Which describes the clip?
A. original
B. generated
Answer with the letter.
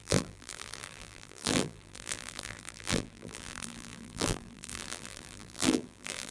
B